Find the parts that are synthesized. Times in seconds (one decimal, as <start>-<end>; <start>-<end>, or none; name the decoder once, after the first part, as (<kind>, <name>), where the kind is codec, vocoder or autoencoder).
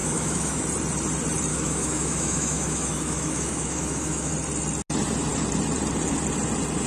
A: 0.0-0.6 (autoencoder, DAC-VAE); 1.5-4.3